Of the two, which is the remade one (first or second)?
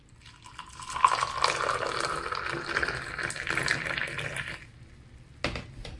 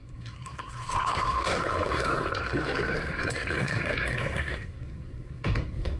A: second